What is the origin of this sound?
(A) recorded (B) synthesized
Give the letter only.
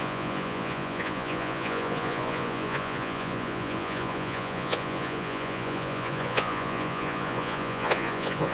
B